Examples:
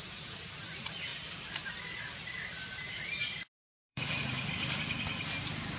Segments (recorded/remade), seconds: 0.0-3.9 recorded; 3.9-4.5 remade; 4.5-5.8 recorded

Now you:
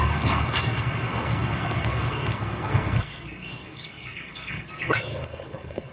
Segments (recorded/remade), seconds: 0.0-5.9 remade

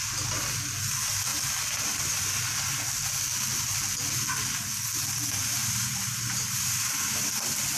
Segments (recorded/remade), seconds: 0.0-5.6 recorded; 5.6-7.2 remade; 7.2-7.8 recorded